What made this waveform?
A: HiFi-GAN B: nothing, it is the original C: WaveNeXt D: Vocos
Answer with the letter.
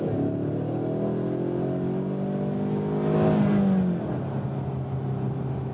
B